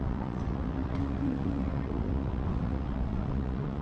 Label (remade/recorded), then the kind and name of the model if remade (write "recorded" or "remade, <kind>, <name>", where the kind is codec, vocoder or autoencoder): remade, vocoder, WaveNeXt